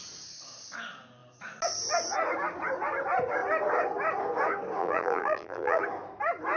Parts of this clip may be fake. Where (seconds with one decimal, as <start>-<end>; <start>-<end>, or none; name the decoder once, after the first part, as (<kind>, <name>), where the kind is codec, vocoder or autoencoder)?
4.8-5.8 (vocoder, BigVGAN v2)